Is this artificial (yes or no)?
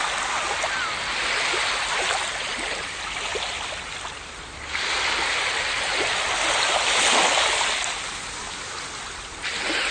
no